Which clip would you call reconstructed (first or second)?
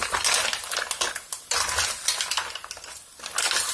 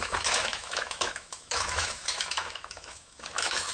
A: second